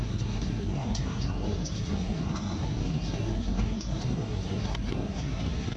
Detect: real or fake fake